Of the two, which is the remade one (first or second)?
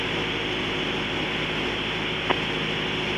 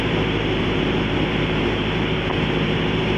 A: second